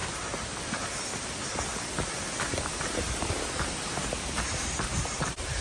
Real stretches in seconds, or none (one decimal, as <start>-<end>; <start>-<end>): 0.0-5.6